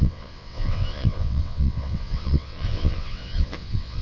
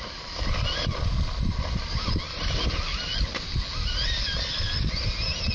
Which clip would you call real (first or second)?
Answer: second